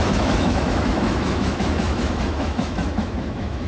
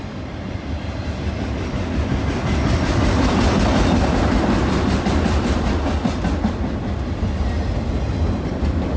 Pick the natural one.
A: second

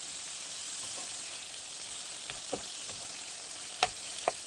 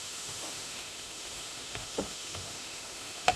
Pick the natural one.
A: first